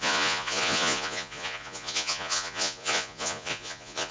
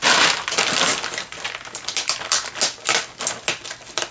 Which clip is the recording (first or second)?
second